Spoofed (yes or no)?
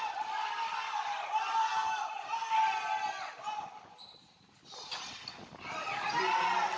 no